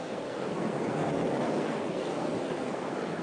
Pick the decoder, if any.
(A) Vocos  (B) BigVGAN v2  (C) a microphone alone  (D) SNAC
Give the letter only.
D